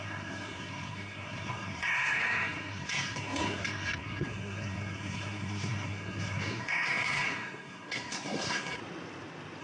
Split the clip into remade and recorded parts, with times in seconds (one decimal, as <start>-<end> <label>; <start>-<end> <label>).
0.0-8.8 remade; 8.8-9.6 recorded